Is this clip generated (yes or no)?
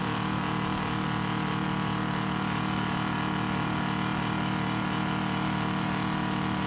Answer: no